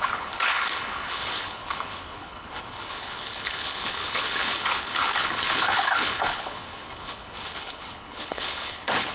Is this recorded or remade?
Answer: remade